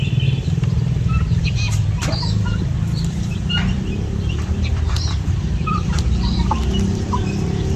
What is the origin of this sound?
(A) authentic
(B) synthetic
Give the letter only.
B